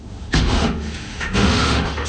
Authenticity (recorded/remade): remade